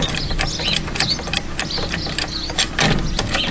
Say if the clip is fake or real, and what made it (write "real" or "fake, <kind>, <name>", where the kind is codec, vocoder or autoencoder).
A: real